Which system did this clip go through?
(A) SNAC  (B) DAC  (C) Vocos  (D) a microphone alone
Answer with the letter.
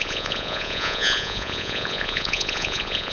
C